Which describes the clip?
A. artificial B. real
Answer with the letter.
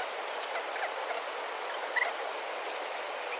B